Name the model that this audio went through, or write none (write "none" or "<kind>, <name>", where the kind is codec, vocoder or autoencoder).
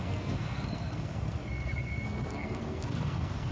codec, SNAC